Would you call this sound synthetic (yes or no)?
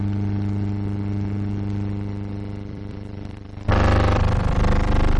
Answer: yes